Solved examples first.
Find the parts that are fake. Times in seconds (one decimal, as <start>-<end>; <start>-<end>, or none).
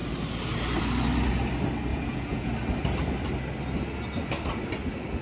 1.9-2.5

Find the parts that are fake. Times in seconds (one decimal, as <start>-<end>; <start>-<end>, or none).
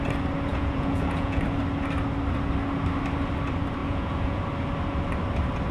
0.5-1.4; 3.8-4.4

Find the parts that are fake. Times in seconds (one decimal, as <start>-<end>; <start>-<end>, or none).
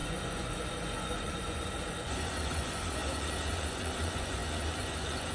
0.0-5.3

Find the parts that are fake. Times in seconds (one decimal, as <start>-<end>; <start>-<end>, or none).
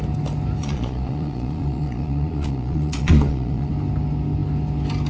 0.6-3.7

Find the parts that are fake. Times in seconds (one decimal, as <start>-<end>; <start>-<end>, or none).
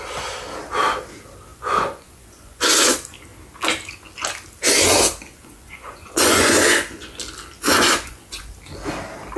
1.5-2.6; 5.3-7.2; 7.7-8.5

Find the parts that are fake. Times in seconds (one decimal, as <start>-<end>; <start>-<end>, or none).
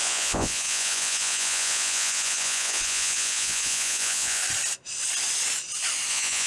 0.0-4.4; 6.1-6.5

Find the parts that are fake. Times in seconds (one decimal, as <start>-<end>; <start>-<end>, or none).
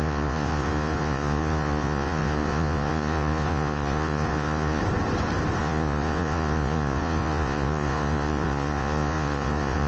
0.0-4.8; 5.6-9.9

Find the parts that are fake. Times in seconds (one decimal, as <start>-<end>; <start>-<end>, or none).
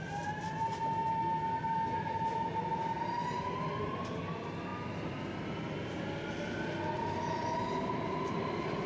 none